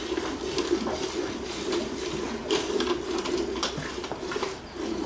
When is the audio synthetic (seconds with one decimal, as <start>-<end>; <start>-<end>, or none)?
none